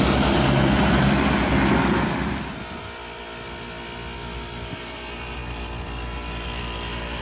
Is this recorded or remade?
recorded